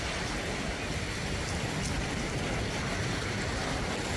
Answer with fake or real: real